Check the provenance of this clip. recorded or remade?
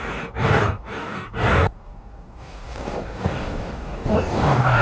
remade